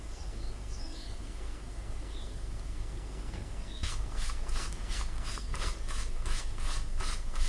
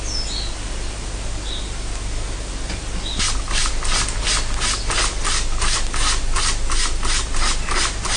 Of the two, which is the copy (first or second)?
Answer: first